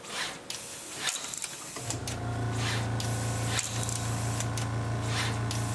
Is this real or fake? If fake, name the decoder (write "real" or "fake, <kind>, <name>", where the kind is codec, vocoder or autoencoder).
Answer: real